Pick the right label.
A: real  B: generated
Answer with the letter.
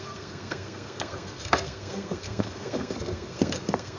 B